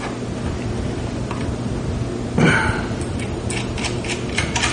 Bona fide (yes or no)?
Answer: yes